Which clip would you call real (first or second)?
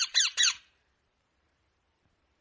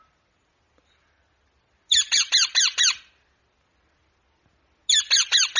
second